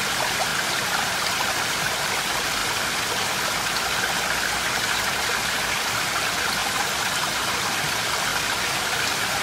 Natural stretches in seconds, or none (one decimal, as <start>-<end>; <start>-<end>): 0.0-0.5; 2.1-6.6; 7.3-8.3